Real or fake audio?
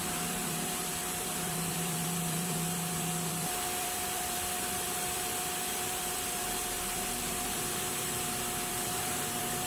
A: fake